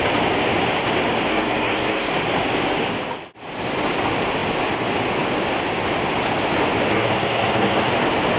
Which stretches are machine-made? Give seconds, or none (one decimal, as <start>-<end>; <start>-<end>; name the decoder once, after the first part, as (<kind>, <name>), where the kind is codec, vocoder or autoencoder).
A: 1.3-2.1 (codec, SNAC); 6.9-7.9